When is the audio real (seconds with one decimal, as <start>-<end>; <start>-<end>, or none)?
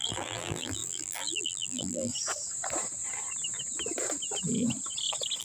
2.1-5.4